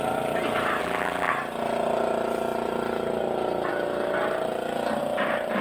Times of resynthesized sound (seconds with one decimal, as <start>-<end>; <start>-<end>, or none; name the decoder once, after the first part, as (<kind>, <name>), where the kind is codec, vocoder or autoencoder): 0.8-1.3 (vocoder, BigVGAN v2)